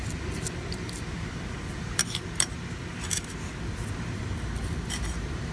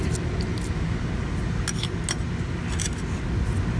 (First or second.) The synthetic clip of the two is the first